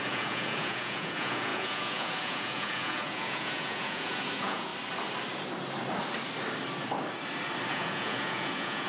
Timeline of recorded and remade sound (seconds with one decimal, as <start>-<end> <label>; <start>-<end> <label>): 0.0-4.7 remade; 4.7-7.7 recorded; 7.7-8.9 remade